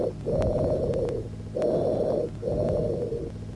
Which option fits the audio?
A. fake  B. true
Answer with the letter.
B